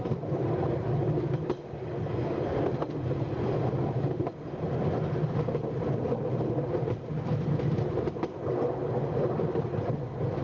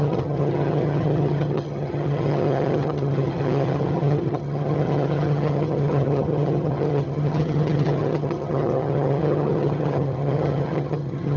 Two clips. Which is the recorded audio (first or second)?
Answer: first